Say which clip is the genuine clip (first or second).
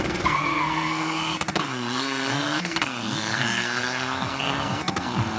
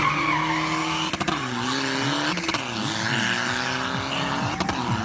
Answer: second